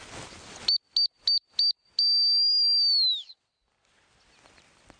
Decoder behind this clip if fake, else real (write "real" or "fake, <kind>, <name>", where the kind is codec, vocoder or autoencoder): real